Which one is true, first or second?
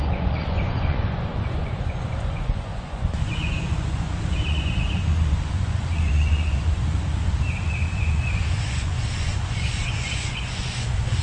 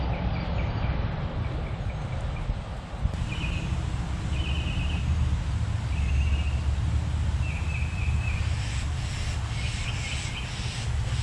second